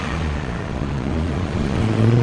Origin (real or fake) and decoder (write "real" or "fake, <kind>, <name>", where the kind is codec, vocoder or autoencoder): fake, vocoder, Vocos